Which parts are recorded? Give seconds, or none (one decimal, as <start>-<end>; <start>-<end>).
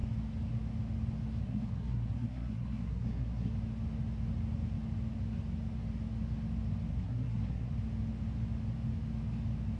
0.0-1.4; 3.5-6.9; 7.7-9.8